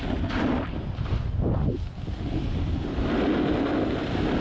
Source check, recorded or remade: recorded